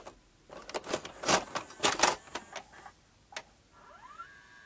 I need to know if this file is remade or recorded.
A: recorded